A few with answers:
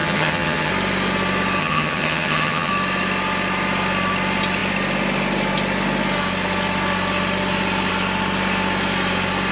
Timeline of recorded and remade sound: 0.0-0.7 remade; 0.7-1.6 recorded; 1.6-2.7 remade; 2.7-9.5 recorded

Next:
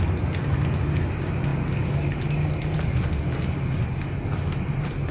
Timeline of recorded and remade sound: 0.0-5.1 recorded

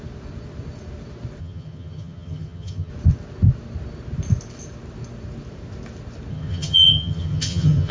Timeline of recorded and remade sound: 0.0-1.4 recorded; 1.4-2.9 remade; 2.9-6.3 recorded; 6.3-7.9 remade

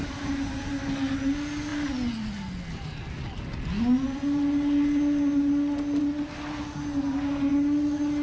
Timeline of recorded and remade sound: 0.0-8.2 recorded